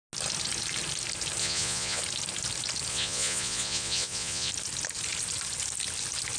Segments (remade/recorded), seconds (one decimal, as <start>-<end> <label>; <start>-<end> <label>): 0.0-1.4 recorded; 1.4-2.0 remade; 2.0-2.9 recorded; 2.9-4.5 remade; 4.5-6.4 recorded